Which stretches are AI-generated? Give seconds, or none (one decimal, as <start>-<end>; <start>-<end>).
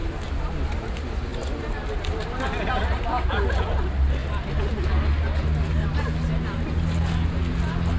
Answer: none